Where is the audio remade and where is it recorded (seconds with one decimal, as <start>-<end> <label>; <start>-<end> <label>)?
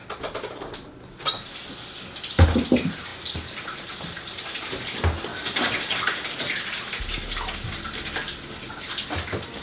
0.0-5.3 recorded; 5.3-6.3 remade; 6.3-9.6 recorded